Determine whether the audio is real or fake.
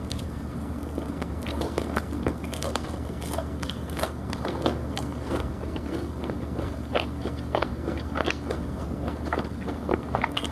fake